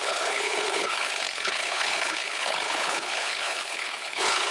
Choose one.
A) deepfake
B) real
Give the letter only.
A